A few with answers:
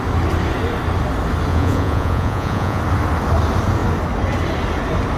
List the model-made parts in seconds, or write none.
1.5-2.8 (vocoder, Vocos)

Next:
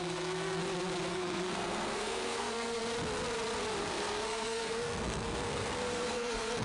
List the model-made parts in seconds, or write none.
0.0-0.6 (codec, SNAC); 1.1-2.8; 3.8-6.6

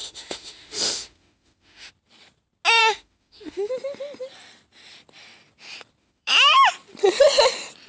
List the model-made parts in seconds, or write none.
0.0-1.9 (autoencoder, DAC-VAE); 2.8-3.7; 6.0-6.7